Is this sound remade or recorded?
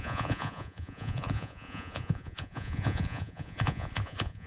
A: remade